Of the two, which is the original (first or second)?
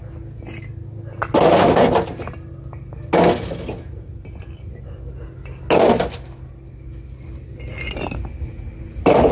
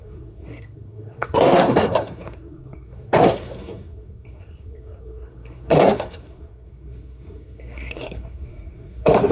first